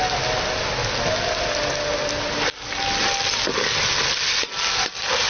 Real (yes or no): yes